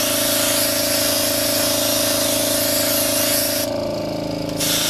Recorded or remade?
recorded